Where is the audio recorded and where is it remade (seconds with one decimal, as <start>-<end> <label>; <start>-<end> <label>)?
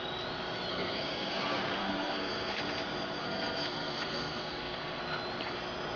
0.0-0.7 recorded; 0.7-1.4 remade; 1.4-1.8 recorded; 1.8-2.6 remade; 2.6-3.2 recorded; 3.2-5.0 remade; 5.0-6.0 recorded